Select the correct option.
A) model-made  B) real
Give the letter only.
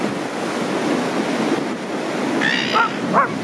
B